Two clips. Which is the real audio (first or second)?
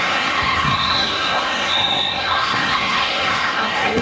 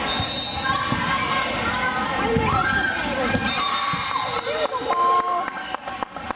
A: second